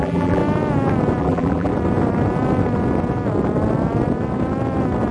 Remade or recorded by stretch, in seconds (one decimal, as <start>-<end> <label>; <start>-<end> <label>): 0.0-0.4 remade; 0.4-1.2 recorded; 1.2-1.7 remade; 1.7-5.1 recorded